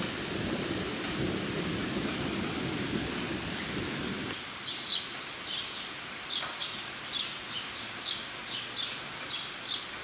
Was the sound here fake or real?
real